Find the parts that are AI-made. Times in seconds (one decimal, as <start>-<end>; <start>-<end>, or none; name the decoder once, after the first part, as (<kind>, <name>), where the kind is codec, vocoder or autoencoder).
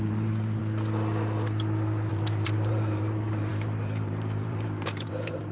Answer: 0.0-0.6 (vocoder, BigVGAN v2); 2.1-5.5